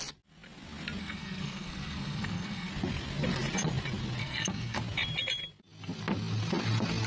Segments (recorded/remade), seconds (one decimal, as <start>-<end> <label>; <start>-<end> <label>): 0.0-1.0 recorded; 1.0-2.7 remade; 2.7-4.2 recorded; 4.2-4.8 remade; 4.8-7.1 recorded